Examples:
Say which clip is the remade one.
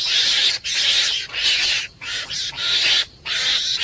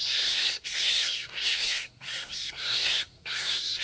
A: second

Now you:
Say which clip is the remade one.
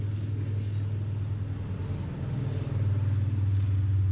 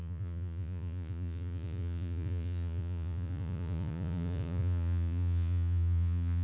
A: second